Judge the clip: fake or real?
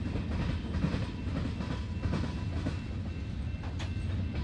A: real